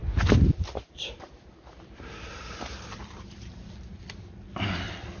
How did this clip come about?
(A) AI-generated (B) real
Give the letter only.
B